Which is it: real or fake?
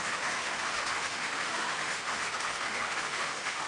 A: fake